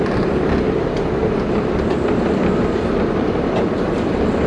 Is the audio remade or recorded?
remade